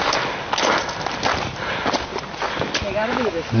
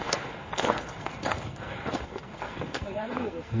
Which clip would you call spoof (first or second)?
second